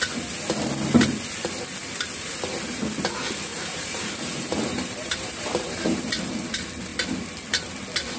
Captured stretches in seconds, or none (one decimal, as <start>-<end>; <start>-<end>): 0.0-3.5; 6.0-8.2